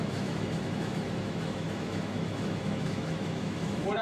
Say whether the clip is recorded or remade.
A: remade